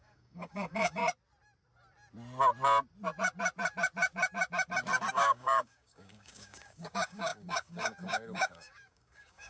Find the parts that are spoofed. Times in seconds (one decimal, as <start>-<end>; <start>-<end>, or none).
0.0-1.0; 5.1-9.5